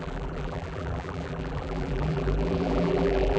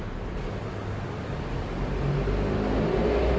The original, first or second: second